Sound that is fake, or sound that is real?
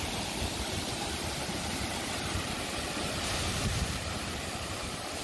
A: fake